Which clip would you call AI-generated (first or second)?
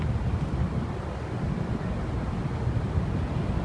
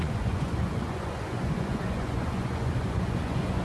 second